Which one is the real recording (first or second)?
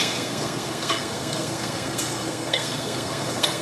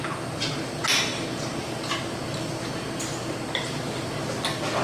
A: second